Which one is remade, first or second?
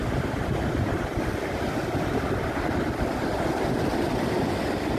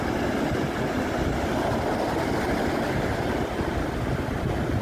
first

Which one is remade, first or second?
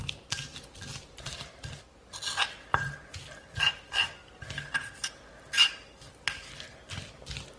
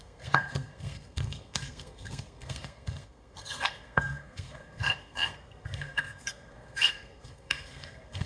second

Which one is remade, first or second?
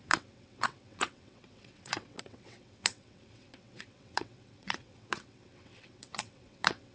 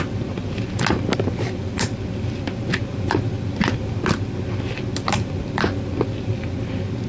first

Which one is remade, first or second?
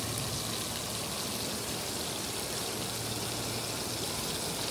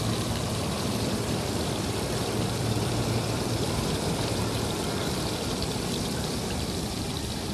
second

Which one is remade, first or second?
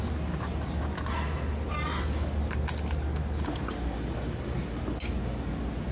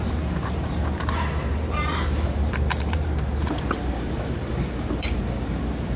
second